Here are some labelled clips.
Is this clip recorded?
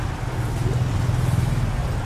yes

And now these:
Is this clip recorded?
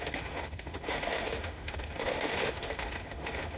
no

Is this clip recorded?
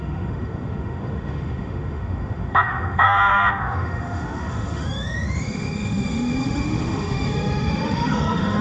no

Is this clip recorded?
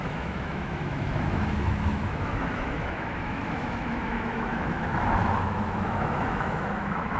no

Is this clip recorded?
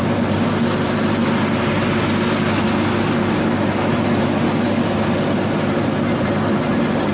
yes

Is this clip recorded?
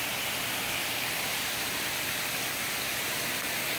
yes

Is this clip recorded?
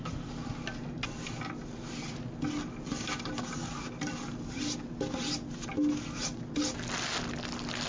yes